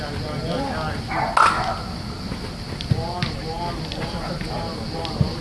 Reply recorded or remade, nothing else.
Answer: recorded